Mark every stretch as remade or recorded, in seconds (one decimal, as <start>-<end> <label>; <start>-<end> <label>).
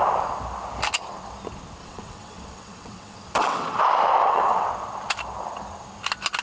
0.0-1.8 recorded; 1.8-3.8 remade; 3.8-4.2 recorded; 4.2-4.7 remade; 4.7-6.4 recorded